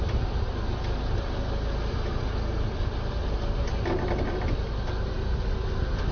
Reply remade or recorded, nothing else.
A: recorded